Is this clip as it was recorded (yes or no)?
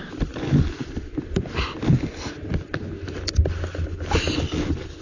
yes